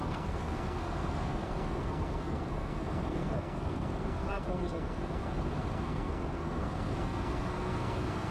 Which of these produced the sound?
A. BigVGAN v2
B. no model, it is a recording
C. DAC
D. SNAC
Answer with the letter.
D